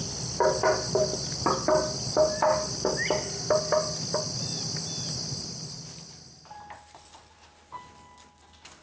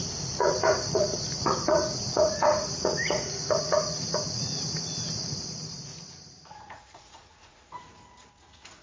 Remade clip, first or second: second